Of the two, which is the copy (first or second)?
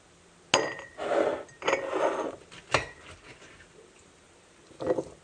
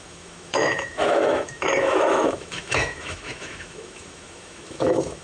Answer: second